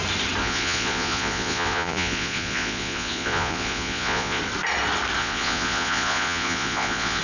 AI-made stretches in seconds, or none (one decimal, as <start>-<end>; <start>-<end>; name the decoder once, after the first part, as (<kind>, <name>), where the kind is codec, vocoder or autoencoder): 0.4-4.4 (vocoder, Vocos); 5.2-7.2